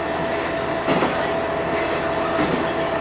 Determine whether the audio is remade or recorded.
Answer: recorded